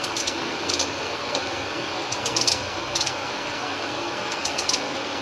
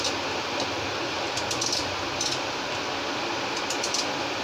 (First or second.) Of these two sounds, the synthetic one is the first